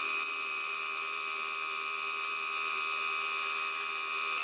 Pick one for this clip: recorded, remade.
remade